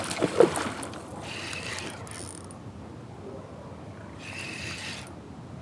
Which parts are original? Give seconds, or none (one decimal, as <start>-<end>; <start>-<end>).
0.0-5.6